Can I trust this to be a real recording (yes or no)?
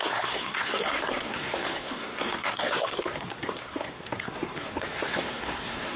no